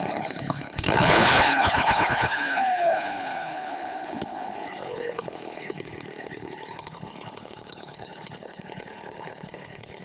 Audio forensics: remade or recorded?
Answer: remade